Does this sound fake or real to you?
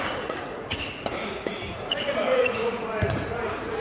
fake